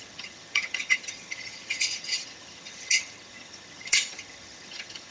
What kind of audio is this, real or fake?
fake